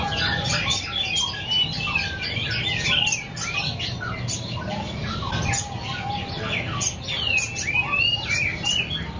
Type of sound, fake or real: real